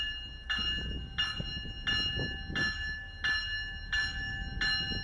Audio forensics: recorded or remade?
recorded